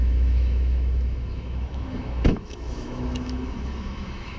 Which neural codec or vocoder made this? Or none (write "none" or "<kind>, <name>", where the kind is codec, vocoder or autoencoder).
autoencoder, DAC-VAE